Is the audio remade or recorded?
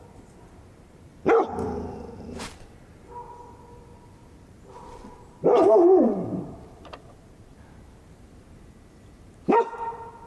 remade